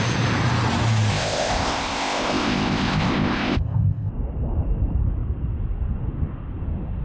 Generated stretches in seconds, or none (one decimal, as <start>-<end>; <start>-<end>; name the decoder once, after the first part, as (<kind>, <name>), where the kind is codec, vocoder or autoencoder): 1.1-4.1 (codec, ZipCodec)